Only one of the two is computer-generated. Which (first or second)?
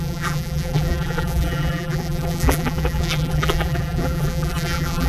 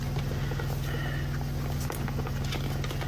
first